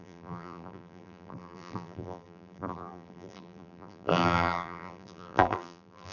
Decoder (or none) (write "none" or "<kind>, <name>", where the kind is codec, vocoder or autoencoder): vocoder, BigVGAN v2